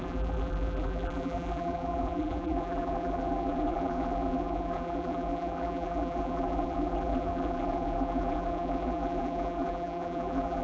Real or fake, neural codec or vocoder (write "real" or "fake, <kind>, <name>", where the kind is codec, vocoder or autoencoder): fake, vocoder, BigVGAN v2